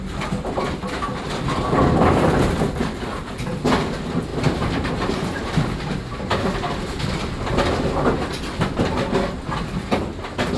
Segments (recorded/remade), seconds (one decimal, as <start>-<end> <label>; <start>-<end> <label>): 0.0-4.3 recorded; 4.3-6.7 remade; 6.7-10.6 recorded